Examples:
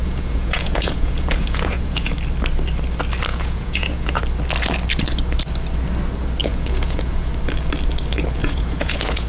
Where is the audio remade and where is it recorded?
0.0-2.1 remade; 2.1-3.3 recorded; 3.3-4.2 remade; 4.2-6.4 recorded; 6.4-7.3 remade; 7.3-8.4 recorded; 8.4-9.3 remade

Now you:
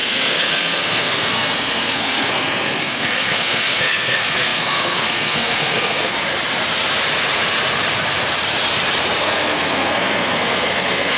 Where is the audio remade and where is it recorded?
0.0-6.2 remade; 6.2-9.2 recorded; 9.2-11.2 remade

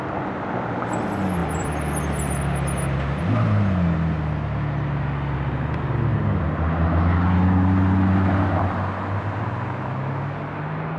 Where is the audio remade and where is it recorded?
0.0-1.4 recorded; 1.4-2.2 remade; 2.2-11.0 recorded